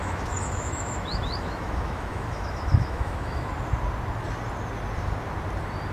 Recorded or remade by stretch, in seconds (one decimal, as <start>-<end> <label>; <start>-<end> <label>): 0.0-3.5 remade; 3.5-5.9 recorded